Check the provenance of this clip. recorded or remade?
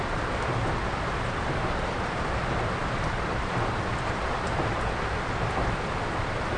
remade